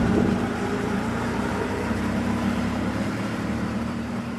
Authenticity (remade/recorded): remade